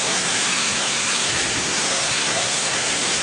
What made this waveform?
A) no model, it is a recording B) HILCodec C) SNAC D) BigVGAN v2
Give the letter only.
C